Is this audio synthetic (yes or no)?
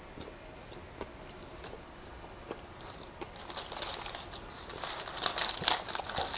no